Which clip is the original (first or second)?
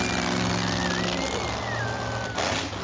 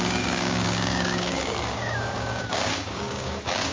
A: first